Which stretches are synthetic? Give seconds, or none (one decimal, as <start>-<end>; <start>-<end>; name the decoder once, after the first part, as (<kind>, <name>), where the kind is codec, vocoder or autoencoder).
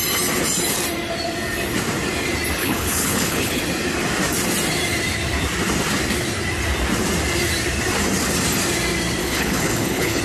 2.6-3.6 (codec, HILCodec); 9.2-10.2